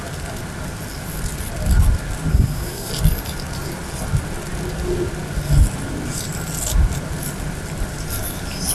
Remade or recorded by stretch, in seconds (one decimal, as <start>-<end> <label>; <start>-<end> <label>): 0.0-2.3 recorded; 2.3-2.9 remade; 2.9-8.7 recorded